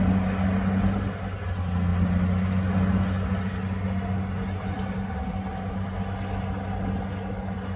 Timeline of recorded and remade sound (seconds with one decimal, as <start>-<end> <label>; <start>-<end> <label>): 0.0-7.8 recorded